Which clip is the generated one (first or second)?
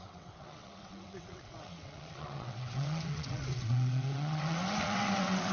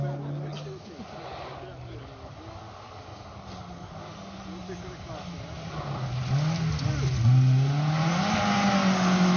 first